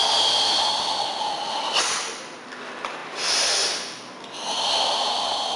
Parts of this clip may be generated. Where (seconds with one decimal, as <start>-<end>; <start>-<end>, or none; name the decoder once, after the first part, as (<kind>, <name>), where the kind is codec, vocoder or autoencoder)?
none